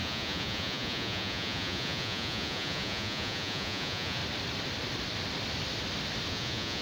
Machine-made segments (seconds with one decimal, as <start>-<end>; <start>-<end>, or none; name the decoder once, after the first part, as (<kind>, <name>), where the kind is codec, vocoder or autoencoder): 0.0-4.2 (vocoder, Vocos); 6.3-6.8